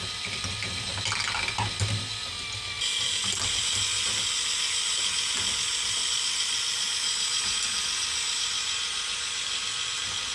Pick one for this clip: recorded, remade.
recorded